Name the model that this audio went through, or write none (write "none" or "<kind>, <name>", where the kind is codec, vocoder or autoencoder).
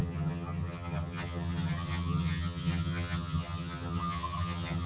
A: vocoder, HiFi-GAN